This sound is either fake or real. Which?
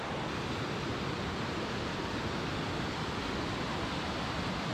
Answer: real